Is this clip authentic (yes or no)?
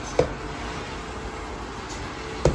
yes